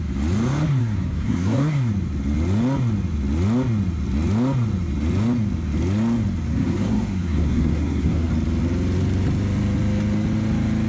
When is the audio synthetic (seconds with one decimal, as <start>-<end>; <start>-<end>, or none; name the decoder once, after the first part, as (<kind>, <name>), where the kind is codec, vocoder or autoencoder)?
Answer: 0.8-1.9 (codec, SNAC); 6.5-8.3